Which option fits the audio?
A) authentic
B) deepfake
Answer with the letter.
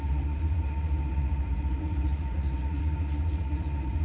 B